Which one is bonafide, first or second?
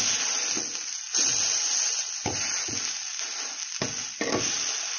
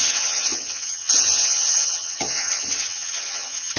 first